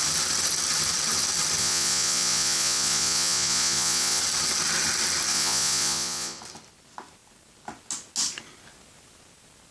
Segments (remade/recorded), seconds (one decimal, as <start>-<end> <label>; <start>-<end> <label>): 0.0-1.6 recorded; 1.6-4.2 remade; 4.2-5.3 recorded; 5.3-6.4 remade; 6.4-9.7 recorded